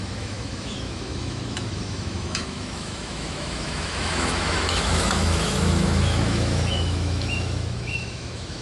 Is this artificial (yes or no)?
yes